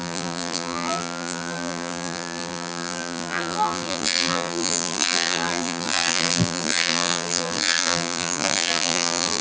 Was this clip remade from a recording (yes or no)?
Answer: yes